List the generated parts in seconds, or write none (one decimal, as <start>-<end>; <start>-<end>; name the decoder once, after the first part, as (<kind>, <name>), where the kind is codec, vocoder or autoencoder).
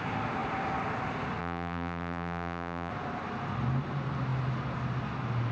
1.4-2.9 (vocoder, BigVGAN v2)